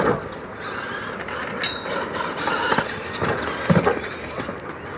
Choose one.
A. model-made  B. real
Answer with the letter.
B